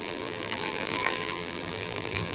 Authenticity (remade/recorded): remade